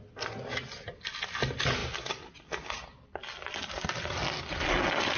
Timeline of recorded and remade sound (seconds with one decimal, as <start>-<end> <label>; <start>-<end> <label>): 0.0-1.8 recorded; 1.8-2.5 remade; 2.5-5.2 recorded